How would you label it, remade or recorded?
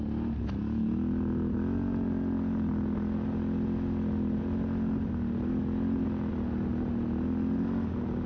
recorded